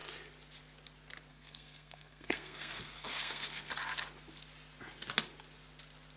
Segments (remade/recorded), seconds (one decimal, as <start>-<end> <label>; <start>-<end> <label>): 0.0-1.3 recorded; 1.3-3.7 remade; 3.7-6.2 recorded